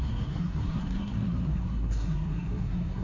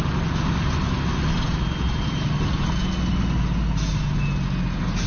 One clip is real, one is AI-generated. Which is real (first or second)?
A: second